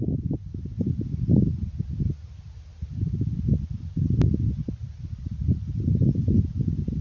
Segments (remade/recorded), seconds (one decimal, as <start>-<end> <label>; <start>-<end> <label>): 0.0-7.0 recorded